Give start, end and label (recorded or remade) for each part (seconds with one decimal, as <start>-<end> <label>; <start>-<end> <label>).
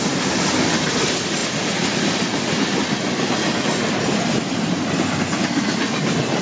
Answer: 0.0-6.4 recorded